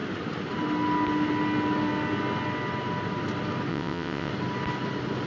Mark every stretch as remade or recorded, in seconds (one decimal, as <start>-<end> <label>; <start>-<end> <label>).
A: 0.0-3.7 recorded; 3.7-4.3 remade; 4.3-5.3 recorded